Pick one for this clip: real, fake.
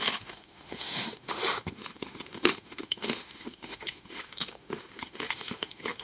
fake